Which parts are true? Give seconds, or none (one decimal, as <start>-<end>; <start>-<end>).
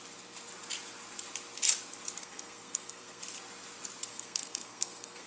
0.0-2.2; 3.2-4.1